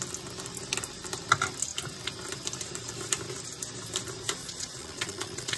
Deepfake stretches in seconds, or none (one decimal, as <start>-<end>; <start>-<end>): 4.4-5.6